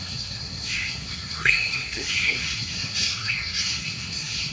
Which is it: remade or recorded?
remade